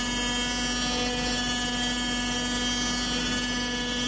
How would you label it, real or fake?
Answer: real